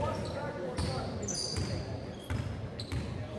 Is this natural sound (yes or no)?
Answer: yes